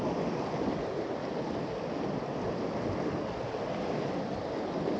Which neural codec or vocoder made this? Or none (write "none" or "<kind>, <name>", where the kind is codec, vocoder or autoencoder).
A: none